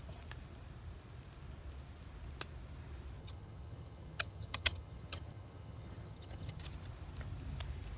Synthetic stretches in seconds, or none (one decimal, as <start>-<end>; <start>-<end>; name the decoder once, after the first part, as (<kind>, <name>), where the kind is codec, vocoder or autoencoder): 3.2-6.6 (vocoder, HiFi-GAN)